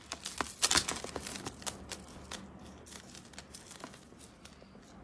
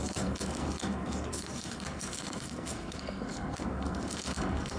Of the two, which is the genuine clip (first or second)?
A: first